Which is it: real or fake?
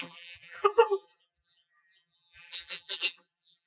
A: fake